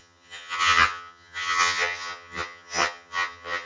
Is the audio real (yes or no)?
no